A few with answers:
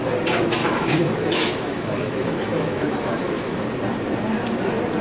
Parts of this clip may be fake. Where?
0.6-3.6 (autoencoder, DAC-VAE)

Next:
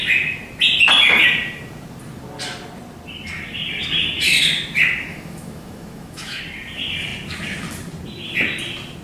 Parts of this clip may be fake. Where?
5.1-6.4 (autoencoder, DAC-VAE)

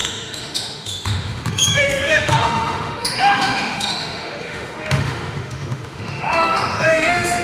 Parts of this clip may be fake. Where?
0.0-7.4 (autoencoder, DAC-VAE)

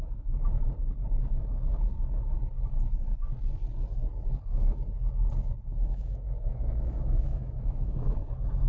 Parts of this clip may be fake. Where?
0.0-0.6 (autoencoder, DAC-VAE); 5.7-8.7

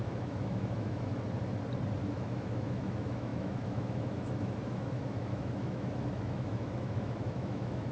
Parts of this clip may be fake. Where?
0.0-1.1 (autoencoder, DAC-VAE); 2.1-7.9